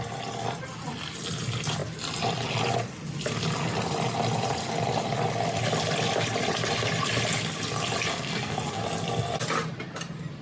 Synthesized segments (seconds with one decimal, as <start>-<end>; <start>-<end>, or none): 8.1-8.8